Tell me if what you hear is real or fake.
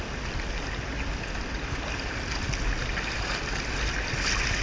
real